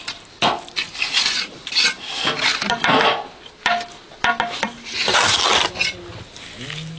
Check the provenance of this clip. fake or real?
real